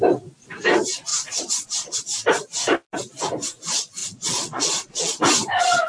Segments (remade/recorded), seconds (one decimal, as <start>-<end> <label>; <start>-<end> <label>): 0.0-1.1 recorded; 1.1-2.0 remade; 2.0-4.0 recorded; 4.0-5.2 remade; 5.2-5.9 recorded